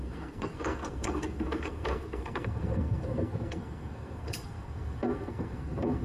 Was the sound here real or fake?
fake